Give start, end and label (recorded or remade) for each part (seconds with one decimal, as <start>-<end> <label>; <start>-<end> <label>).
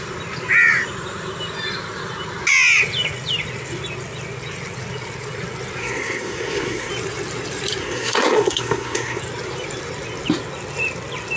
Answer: 0.0-5.8 recorded; 5.8-6.9 remade; 6.9-7.8 recorded; 7.8-9.2 remade; 9.2-11.4 recorded